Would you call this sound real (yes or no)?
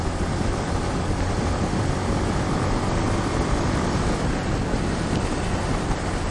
yes